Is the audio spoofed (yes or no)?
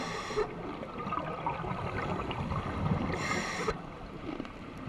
no